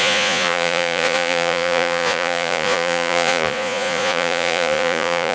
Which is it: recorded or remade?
remade